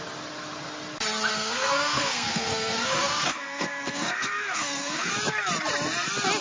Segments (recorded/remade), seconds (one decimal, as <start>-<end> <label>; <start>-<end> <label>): 0.0-1.3 recorded; 1.3-5.1 remade; 5.1-6.4 recorded